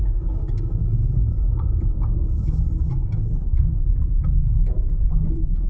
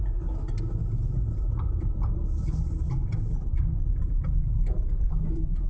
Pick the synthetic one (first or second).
first